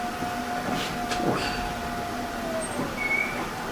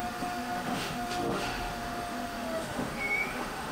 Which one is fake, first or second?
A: second